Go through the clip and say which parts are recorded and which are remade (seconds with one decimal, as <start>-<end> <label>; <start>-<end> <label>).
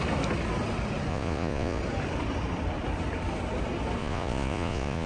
0.0-1.1 recorded; 1.1-1.8 remade; 1.8-4.0 recorded; 4.0-5.1 remade